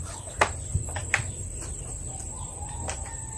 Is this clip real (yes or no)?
yes